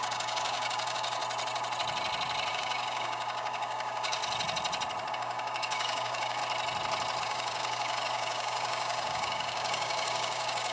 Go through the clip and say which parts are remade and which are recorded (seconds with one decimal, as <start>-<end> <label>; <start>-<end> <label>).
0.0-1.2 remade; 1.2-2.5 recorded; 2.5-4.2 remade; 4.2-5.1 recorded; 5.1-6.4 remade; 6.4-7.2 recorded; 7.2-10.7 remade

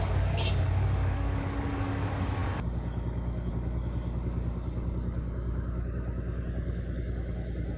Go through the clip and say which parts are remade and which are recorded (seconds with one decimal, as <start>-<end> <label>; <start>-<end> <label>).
0.0-7.8 remade

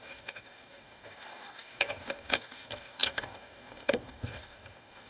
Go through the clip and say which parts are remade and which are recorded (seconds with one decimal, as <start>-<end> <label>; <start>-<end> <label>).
0.0-5.1 remade